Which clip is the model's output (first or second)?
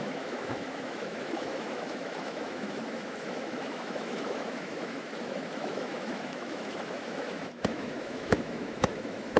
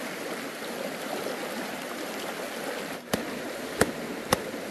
first